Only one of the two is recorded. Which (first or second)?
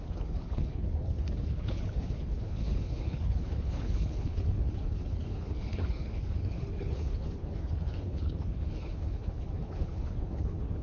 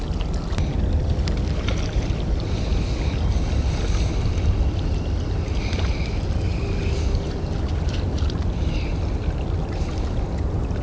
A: second